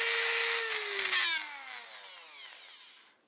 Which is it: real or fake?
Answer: real